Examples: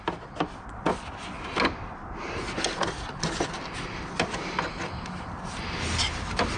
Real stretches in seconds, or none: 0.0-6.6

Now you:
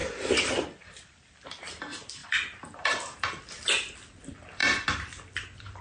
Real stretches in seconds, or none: 4.6-5.3

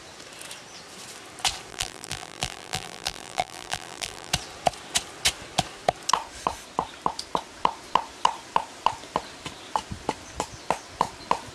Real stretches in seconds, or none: 0.0-1.7; 4.3-11.5